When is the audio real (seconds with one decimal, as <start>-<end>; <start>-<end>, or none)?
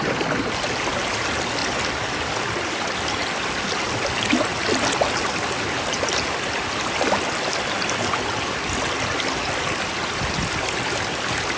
0.0-11.6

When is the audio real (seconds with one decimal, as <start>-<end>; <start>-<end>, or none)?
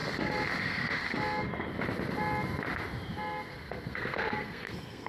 0.0-0.6; 1.0-3.5